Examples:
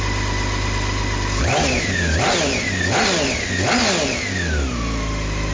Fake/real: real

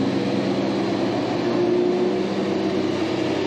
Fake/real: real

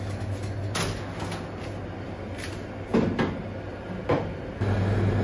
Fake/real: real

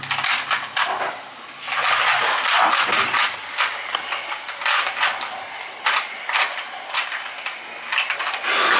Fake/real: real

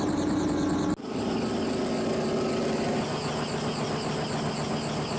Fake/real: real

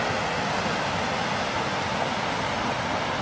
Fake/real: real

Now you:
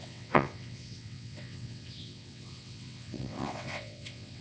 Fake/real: fake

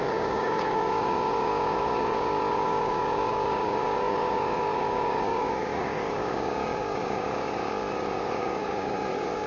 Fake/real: fake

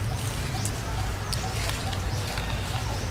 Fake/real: real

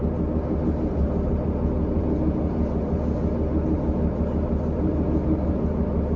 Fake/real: fake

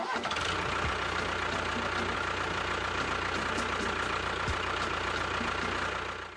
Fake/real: real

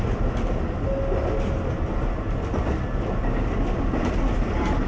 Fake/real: real